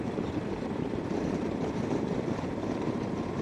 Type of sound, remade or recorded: remade